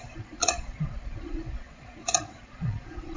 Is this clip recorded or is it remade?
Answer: remade